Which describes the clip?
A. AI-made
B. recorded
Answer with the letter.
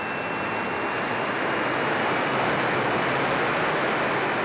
B